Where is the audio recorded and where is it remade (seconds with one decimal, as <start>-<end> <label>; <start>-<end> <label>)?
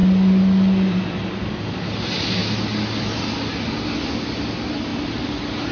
0.0-5.7 recorded